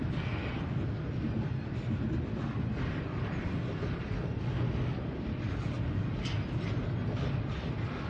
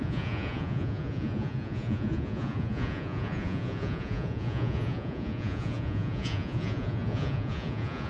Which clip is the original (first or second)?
first